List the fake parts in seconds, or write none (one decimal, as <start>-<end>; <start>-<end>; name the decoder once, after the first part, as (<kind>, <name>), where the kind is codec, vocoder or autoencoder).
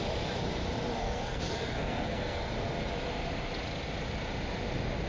1.0-2.5 (codec, SNAC)